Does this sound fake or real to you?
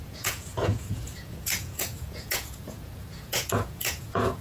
fake